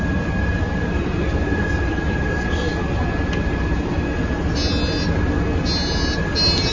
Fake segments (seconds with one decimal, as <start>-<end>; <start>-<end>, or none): none